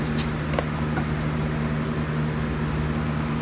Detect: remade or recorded recorded